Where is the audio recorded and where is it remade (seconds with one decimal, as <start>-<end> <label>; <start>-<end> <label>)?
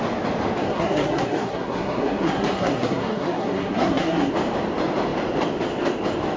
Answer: 0.0-0.6 recorded; 0.6-4.3 remade; 4.3-6.4 recorded